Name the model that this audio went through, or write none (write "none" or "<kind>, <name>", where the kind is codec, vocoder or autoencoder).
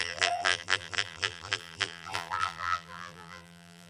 vocoder, BigVGAN v2